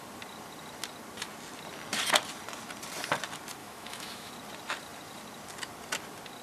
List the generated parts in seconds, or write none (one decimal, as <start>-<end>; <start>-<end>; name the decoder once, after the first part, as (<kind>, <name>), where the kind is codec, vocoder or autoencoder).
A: 3.6-4.3 (autoencoder, DAC-VAE)